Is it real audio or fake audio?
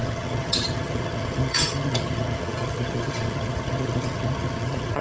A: fake